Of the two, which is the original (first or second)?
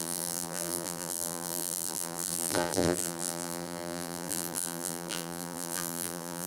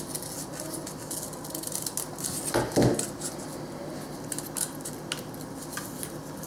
second